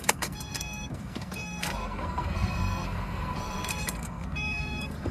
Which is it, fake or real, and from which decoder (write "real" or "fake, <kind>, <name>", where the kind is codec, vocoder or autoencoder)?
fake, codec, SNAC